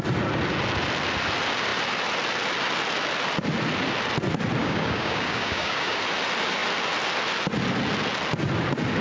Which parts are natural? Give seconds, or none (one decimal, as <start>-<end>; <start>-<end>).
0.0-4.6; 6.0-9.0

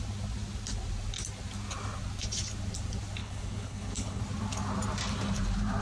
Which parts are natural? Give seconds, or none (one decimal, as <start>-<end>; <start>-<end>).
0.0-3.2; 4.2-5.8